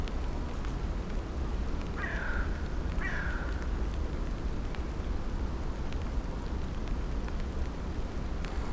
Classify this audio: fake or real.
real